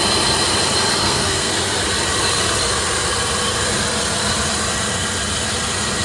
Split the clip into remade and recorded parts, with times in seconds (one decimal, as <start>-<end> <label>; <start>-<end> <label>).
0.0-1.0 recorded; 1.0-1.5 remade; 1.5-6.0 recorded